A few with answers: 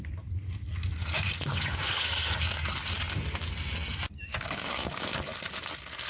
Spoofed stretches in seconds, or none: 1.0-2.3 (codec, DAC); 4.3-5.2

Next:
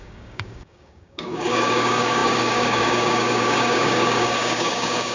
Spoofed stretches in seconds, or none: 0.0-5.1 (codec, DAC)

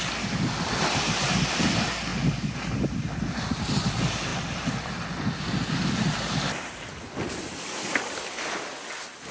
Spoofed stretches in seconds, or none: none

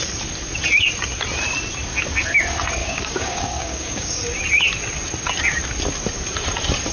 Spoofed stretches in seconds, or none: 2.8-4.2 (codec, DAC)

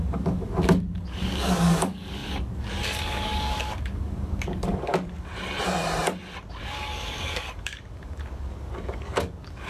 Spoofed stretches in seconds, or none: 0.0-5.3 (codec, DAC); 6.5-9.7

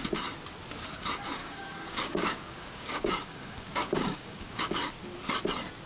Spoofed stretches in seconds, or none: 1.4-4.9 (codec, DAC)

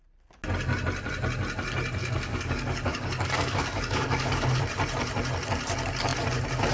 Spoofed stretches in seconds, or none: 2.0-4.6 (codec, DAC)

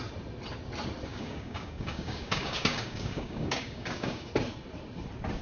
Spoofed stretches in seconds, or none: 1.1-4.3 (codec, DAC)